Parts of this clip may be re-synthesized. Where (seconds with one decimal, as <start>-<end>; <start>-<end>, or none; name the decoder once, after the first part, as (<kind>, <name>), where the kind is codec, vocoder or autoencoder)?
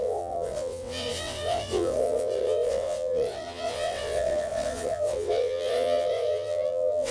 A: 0.0-7.1 (vocoder, WaveNeXt)